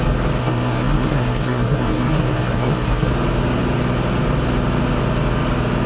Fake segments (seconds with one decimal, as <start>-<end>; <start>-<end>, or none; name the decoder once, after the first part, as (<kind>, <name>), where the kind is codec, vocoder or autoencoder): 0.4-3.1 (codec, SNAC)